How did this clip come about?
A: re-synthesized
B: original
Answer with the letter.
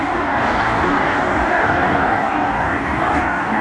A